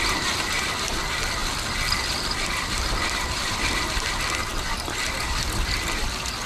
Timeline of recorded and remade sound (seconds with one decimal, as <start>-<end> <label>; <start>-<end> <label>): 0.0-6.5 remade